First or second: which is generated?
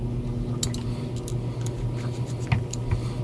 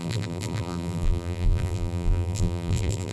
second